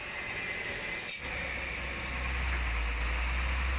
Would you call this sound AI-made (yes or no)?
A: no